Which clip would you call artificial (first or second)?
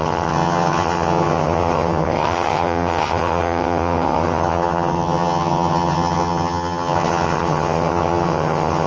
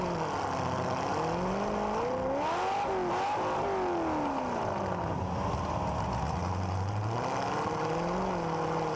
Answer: first